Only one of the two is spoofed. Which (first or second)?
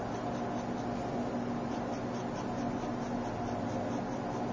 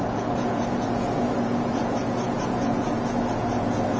second